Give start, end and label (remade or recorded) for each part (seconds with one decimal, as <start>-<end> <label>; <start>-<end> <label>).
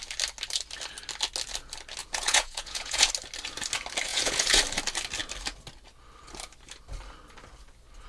0.0-2.0 recorded; 2.0-3.1 remade; 3.1-4.1 recorded; 4.1-4.6 remade; 4.6-8.1 recorded